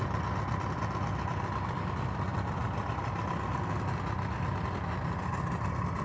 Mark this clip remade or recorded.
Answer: recorded